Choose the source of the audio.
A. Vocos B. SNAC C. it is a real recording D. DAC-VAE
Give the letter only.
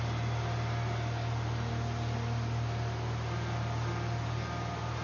C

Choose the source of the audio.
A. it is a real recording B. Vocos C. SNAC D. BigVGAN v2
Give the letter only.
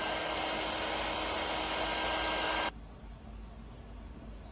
A